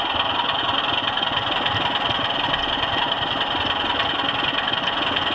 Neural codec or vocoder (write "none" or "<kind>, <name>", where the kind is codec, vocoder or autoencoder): none